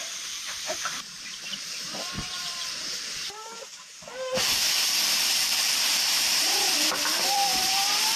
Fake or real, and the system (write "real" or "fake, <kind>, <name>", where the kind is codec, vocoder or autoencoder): fake, vocoder, BigVGAN v2